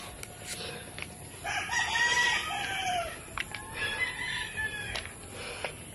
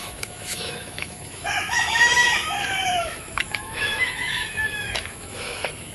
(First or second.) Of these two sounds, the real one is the first